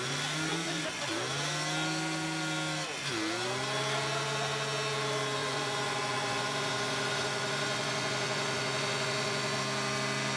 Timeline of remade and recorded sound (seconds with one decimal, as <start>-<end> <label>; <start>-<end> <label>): 0.0-0.5 recorded; 0.5-1.1 remade; 1.1-5.4 recorded; 5.4-9.6 remade; 9.6-10.4 recorded